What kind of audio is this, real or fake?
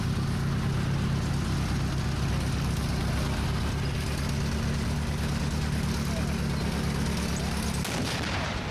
real